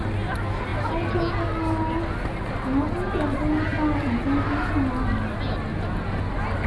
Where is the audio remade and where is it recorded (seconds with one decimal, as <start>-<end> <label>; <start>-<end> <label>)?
0.0-6.7 recorded

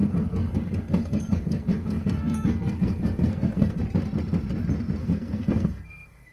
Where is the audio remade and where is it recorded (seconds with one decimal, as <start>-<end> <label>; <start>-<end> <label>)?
0.0-3.8 remade; 3.8-5.0 recorded; 5.0-6.3 remade

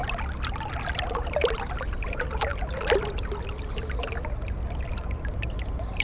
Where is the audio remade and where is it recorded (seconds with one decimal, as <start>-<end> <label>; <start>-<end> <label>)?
0.0-1.9 recorded; 1.9-2.5 remade; 2.5-5.3 recorded; 5.3-6.0 remade

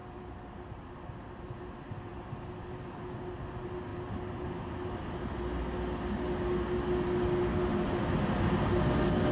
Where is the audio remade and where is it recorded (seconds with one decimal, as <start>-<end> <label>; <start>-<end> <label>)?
0.0-9.3 recorded

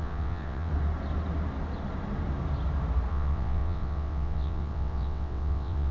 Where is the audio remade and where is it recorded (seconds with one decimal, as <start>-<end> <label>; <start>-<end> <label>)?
0.0-0.7 remade; 0.7-3.1 recorded; 3.1-5.9 remade

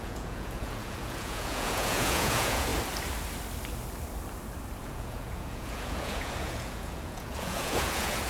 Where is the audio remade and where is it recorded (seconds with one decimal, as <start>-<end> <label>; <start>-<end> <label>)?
0.0-2.7 remade; 2.7-4.8 recorded; 4.8-8.3 remade

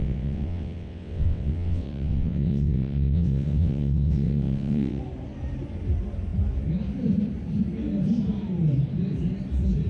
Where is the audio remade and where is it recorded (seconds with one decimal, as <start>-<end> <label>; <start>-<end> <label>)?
0.0-5.0 remade; 5.0-9.9 recorded